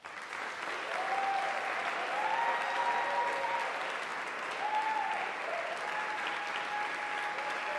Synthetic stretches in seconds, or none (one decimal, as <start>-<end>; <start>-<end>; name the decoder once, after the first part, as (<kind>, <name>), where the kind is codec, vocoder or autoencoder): none